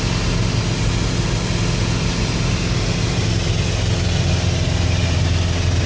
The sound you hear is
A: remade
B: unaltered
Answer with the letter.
B